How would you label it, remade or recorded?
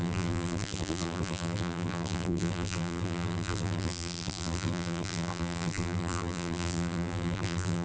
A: remade